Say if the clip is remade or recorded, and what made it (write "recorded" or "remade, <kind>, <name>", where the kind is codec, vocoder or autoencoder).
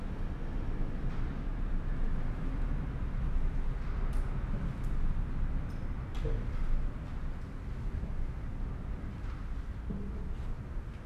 recorded